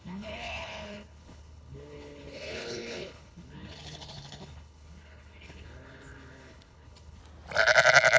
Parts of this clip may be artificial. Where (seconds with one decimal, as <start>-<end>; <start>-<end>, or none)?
0.0-7.2